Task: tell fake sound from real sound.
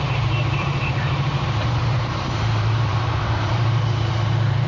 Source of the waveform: fake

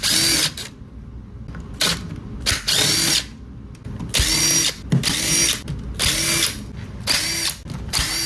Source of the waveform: real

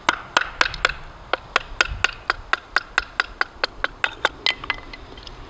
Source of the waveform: real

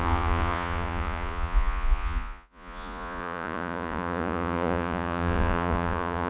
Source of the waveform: fake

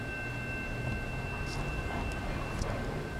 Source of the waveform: real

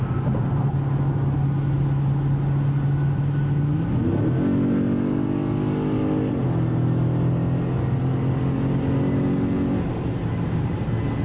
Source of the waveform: real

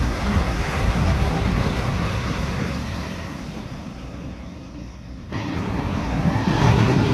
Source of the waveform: fake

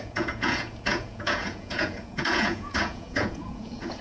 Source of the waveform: fake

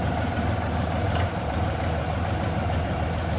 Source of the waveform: fake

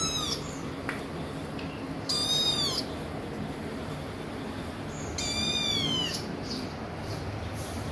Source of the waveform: real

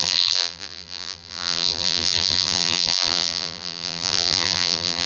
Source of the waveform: fake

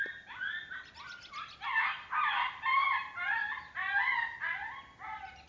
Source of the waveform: real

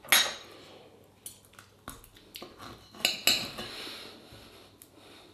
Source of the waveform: real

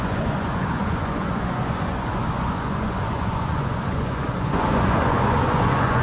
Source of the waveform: fake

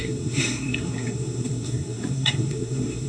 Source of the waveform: fake